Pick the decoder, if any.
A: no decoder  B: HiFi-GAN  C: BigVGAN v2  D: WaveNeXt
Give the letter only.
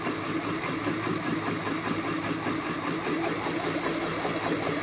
A